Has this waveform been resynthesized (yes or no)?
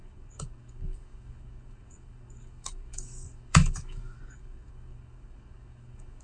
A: yes